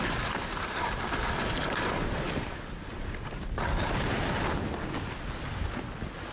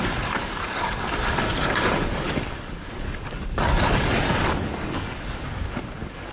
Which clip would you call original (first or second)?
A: first